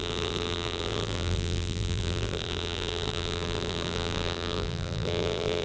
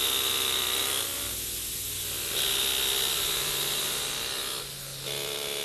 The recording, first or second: second